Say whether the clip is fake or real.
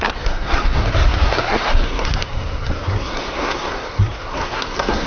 fake